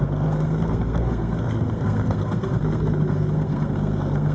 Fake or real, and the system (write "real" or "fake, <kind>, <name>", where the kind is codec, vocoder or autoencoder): fake, codec, SNAC